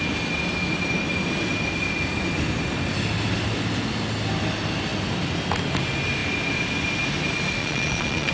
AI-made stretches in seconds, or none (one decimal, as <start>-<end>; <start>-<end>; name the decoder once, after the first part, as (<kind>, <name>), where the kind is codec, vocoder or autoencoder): 7.6-8.3 (vocoder, Vocos)